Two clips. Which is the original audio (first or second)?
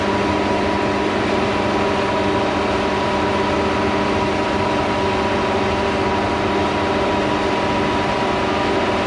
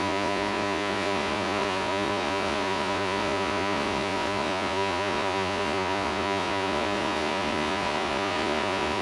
first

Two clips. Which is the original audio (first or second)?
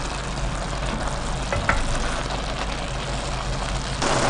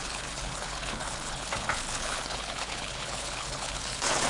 first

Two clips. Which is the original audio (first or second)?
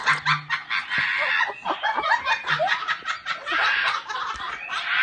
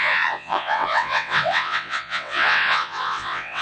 first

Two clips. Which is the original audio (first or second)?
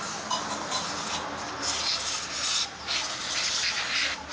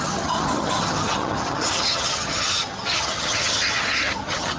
first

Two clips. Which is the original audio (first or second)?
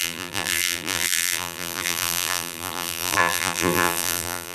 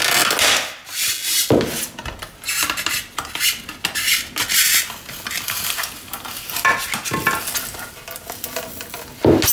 second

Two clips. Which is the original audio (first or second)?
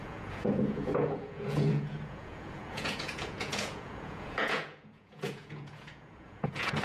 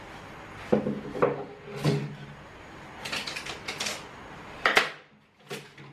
second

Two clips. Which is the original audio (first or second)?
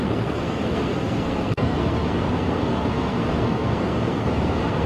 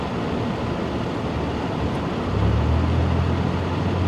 second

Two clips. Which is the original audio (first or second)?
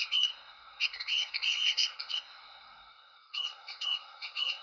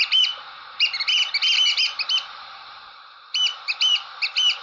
second